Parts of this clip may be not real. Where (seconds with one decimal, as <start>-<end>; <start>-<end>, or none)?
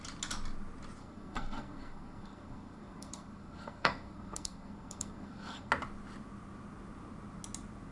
1.0-5.7